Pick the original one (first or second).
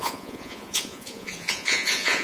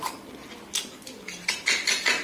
second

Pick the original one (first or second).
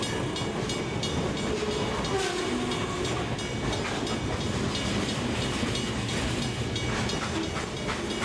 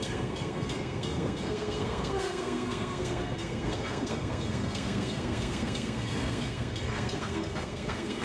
first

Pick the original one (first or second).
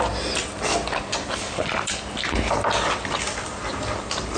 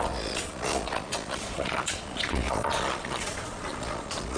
first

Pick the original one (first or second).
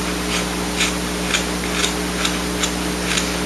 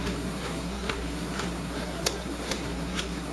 first